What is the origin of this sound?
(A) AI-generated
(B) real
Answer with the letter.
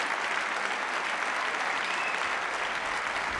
B